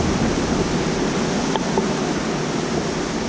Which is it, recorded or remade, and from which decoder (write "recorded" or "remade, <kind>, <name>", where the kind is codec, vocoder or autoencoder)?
recorded